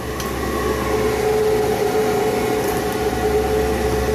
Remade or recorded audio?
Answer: recorded